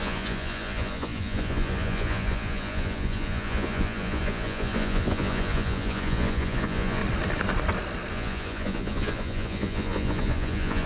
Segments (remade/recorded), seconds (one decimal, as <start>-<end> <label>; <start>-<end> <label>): 0.0-7.0 remade; 7.0-8.1 recorded; 8.1-10.9 remade